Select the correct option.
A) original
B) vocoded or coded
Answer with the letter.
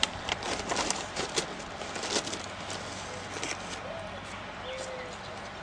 A